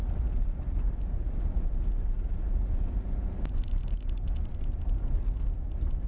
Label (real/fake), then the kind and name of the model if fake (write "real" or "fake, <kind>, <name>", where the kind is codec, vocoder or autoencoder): real